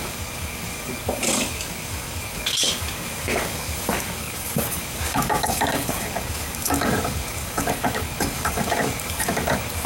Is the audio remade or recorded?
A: remade